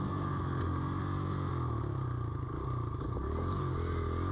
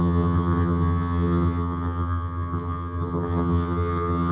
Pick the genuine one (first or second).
first